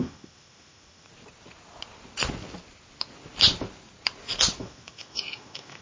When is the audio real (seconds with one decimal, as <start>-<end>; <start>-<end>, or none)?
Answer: 1.1-4.6